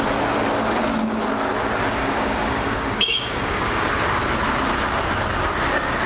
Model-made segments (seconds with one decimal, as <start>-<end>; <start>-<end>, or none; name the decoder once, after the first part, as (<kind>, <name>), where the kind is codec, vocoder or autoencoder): 2.0-3.9 (codec, DAC)